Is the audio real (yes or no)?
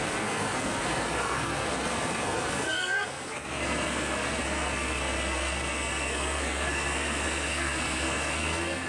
no